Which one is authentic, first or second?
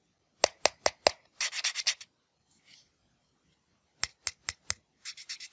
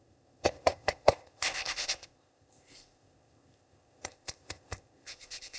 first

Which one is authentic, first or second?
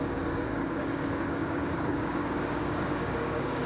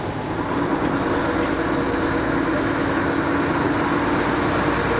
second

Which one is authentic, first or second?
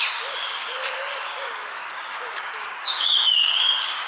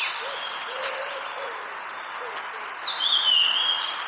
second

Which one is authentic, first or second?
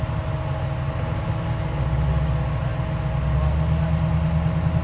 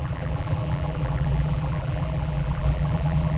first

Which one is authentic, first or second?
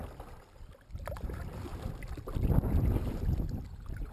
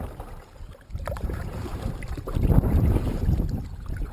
first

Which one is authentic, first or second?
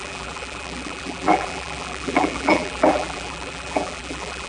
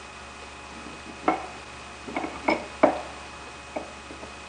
second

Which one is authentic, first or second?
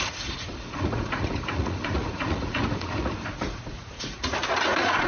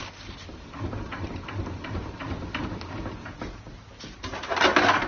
second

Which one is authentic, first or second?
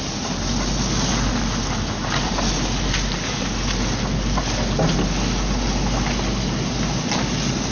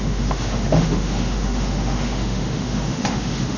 first